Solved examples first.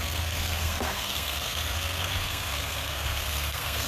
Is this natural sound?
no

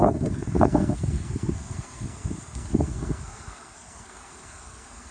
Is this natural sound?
no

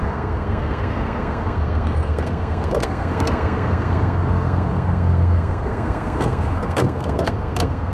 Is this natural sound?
no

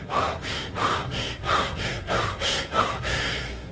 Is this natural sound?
no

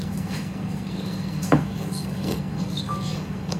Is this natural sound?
no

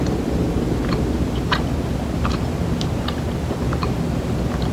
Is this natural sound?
yes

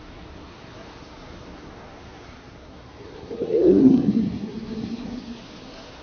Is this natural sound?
no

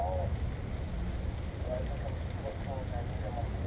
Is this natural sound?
yes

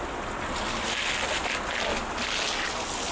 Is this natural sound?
yes